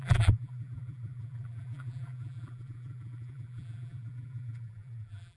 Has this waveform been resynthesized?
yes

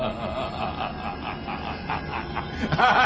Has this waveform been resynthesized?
no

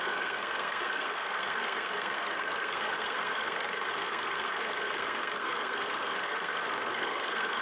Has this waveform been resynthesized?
yes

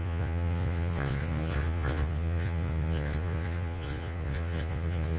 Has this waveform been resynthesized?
yes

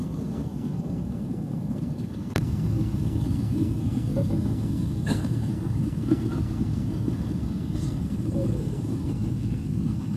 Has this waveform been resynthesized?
yes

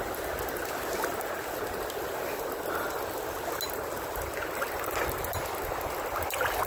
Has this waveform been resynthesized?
no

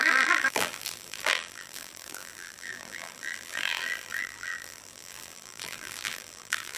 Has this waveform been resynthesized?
yes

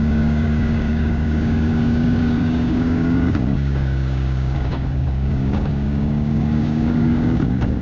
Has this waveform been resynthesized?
yes